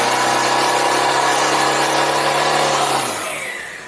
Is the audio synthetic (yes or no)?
no